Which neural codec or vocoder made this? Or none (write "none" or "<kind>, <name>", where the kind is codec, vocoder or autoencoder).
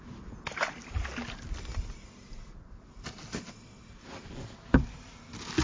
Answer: none